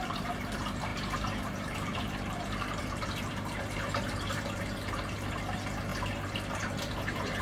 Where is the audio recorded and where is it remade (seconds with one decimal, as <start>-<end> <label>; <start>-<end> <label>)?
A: 0.0-5.9 remade; 5.9-6.6 recorded; 6.6-7.4 remade